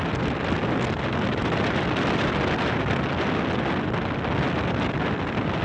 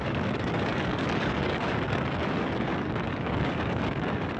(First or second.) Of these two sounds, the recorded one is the first